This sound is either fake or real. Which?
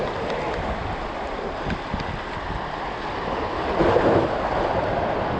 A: real